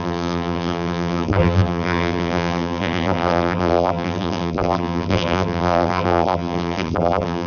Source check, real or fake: fake